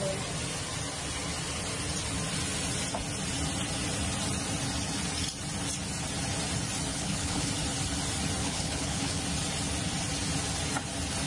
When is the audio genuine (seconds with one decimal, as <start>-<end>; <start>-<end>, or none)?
0.0-6.9; 7.5-8.4; 9.2-11.3